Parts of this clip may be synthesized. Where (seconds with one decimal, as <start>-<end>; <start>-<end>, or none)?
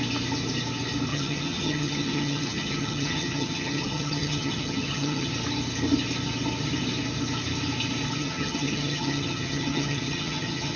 1.1-5.3; 8.2-10.8